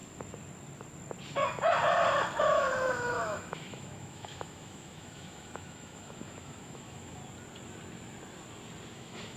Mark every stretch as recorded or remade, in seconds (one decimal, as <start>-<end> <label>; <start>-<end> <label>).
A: 0.0-2.4 recorded; 2.4-7.2 remade; 7.2-8.9 recorded; 8.9-9.4 remade

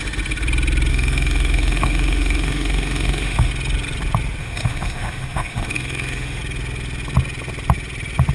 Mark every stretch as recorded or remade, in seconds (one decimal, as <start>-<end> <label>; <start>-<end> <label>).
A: 0.0-0.9 recorded; 0.9-3.5 remade; 3.5-4.4 recorded; 4.4-6.4 remade; 6.4-8.3 recorded

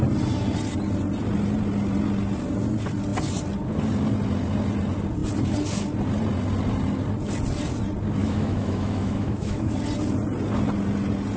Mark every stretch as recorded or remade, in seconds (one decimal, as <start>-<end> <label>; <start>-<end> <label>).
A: 0.0-8.2 recorded; 8.2-9.7 remade; 9.7-11.4 recorded

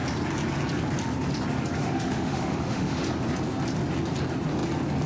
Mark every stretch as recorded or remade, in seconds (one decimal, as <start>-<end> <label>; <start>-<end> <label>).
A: 0.0-1.8 recorded; 1.8-3.0 remade; 3.0-5.1 recorded

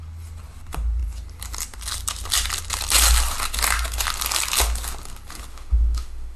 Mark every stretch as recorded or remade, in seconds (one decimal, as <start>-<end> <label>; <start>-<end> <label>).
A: 0.0-5.5 recorded; 5.5-6.4 remade

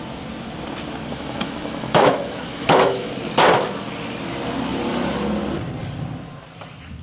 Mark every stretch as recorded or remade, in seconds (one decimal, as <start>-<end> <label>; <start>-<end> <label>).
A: 0.0-1.1 recorded; 1.1-3.1 remade; 3.1-7.0 recorded

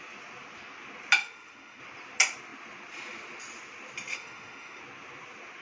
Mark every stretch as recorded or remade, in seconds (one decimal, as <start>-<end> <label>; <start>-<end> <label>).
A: 0.0-1.2 recorded; 1.2-1.8 remade; 1.8-4.1 recorded; 4.1-4.8 remade; 4.8-5.6 recorded

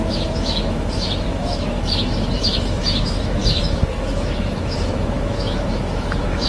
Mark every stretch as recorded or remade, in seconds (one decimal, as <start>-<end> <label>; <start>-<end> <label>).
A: 0.0-6.5 remade